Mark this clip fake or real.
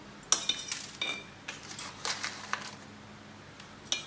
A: real